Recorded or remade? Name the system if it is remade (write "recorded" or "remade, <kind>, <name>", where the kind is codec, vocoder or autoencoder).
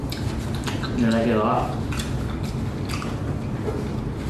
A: recorded